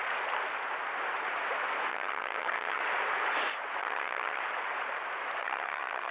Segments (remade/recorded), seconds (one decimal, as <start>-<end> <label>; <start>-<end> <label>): 0.0-1.9 recorded; 1.9-2.8 remade; 2.8-3.8 recorded; 3.8-4.4 remade; 4.4-5.4 recorded; 5.4-6.1 remade